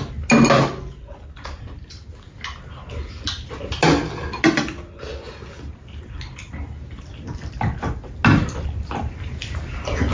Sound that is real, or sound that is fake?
real